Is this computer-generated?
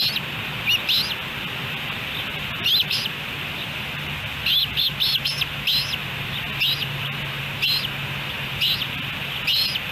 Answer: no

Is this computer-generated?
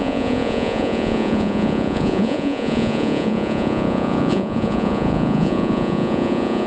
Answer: yes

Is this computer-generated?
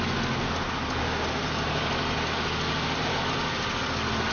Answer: no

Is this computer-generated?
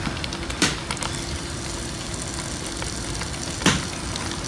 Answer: no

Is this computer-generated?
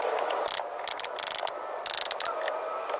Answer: no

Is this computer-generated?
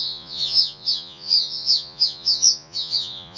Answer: yes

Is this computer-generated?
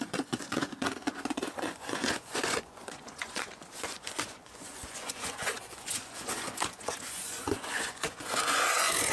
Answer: yes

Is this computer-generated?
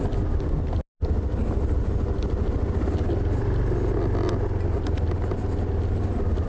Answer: no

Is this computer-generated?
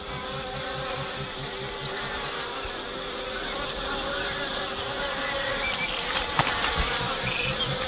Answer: no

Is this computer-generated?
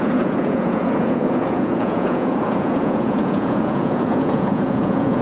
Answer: yes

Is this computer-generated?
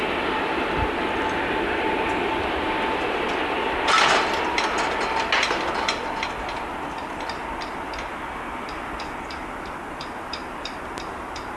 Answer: no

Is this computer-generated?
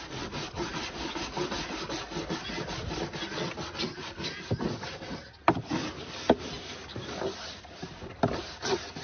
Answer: no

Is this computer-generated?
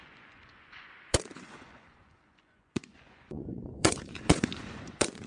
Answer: yes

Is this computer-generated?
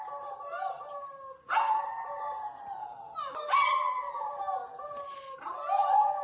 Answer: no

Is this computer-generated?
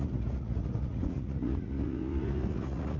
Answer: yes